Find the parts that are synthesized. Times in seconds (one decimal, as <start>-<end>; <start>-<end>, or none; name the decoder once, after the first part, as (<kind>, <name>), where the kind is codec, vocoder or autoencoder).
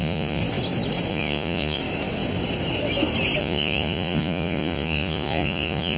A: 0.0-0.4 (vocoder, Vocos); 1.1-1.8; 3.4-6.0